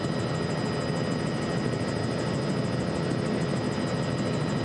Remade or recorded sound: recorded